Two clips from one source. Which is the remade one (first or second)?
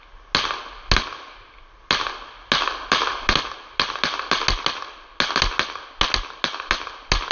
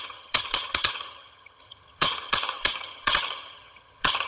second